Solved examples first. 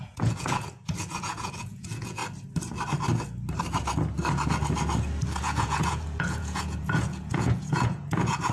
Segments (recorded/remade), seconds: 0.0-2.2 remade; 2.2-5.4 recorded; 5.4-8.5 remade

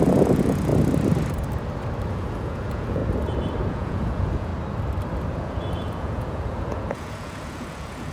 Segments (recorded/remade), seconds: 0.0-0.7 remade; 0.7-2.1 recorded; 2.1-3.0 remade; 3.0-3.7 recorded; 3.7-4.5 remade; 4.5-5.3 recorded; 5.3-8.1 remade

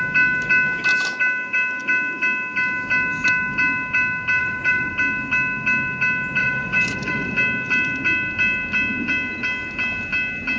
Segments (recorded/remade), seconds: 0.0-4.4 recorded; 4.4-4.9 remade; 4.9-6.4 recorded; 6.4-7.3 remade; 7.3-10.6 recorded

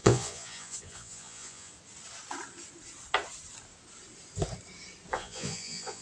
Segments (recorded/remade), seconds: 0.0-1.7 remade; 1.7-5.1 recorded; 5.1-6.0 remade

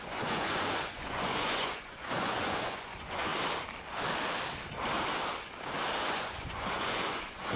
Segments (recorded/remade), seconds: 0.0-3.3 remade; 3.3-6.0 recorded; 6.0-7.6 remade

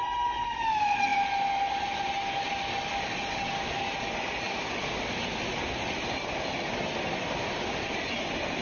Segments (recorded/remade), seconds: 0.0-8.6 recorded

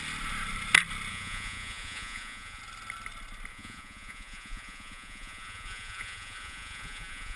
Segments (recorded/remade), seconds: 0.0-1.1 recorded; 1.1-2.6 remade; 2.6-3.5 recorded; 3.5-7.4 remade